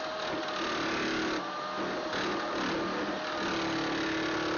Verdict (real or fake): real